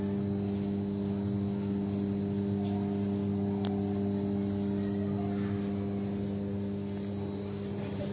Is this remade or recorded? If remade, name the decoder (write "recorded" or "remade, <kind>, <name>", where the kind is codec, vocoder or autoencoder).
recorded